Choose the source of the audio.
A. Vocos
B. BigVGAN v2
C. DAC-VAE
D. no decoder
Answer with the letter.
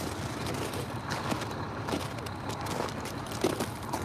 B